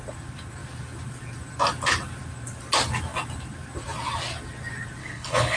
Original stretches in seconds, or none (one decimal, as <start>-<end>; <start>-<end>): 0.0-5.0